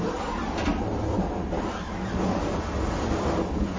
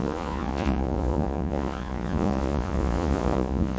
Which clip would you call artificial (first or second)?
second